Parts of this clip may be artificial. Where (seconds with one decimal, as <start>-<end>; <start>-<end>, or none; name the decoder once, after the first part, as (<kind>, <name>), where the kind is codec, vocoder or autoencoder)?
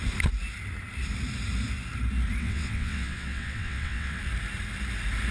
2.4-4.2 (vocoder, WaveNeXt)